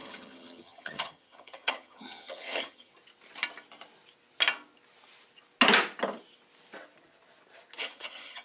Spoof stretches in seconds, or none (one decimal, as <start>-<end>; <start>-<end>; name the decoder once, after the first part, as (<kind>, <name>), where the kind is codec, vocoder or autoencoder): 0.0-2.9 (vocoder, HiFi-GAN); 7.8-8.4